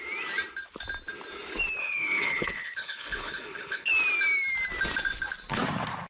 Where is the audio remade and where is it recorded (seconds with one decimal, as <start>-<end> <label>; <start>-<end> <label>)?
0.0-1.8 recorded; 1.8-3.9 remade; 3.9-6.1 recorded